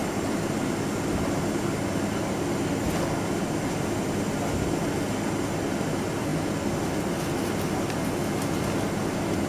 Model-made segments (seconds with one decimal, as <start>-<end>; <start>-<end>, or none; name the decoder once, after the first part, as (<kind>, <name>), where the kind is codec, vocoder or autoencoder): none